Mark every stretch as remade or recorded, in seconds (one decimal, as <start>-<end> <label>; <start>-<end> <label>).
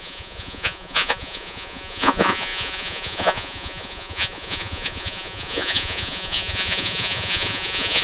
0.0-8.0 remade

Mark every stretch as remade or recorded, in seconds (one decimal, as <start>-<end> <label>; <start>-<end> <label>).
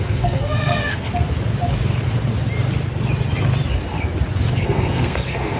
0.0-1.1 remade; 1.1-4.5 recorded; 4.5-5.6 remade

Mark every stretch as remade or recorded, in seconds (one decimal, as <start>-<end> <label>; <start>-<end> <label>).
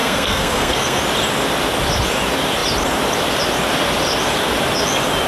0.0-1.0 remade; 1.0-5.3 recorded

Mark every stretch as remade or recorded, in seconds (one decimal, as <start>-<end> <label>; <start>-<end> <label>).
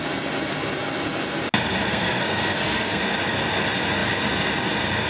0.0-1.9 recorded; 1.9-3.0 remade; 3.0-5.1 recorded